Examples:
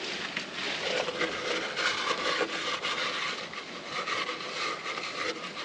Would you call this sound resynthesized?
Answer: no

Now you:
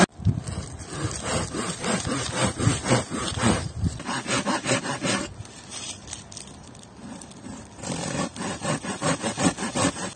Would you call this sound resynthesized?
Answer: no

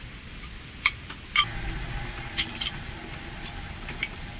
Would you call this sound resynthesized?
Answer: no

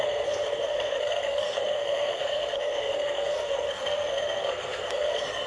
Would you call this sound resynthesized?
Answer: yes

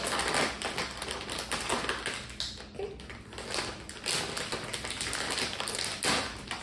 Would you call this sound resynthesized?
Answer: no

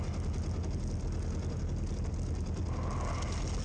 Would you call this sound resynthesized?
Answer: no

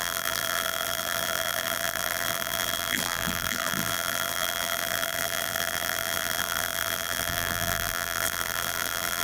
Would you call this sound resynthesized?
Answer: yes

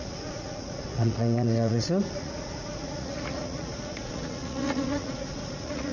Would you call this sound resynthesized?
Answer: yes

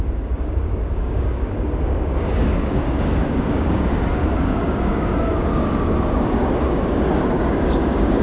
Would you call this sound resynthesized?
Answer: yes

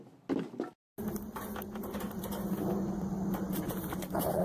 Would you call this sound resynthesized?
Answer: no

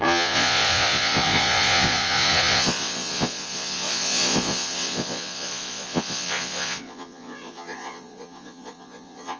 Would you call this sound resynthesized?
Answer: yes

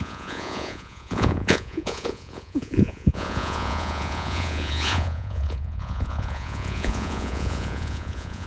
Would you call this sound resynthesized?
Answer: yes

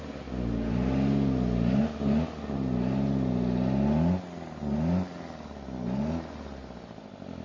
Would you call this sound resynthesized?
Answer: no